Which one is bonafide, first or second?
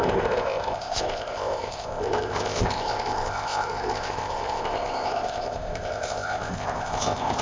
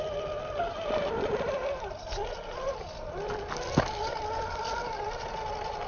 second